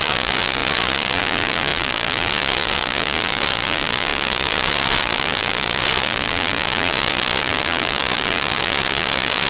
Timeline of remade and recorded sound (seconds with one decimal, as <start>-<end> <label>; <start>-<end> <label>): 0.0-9.5 remade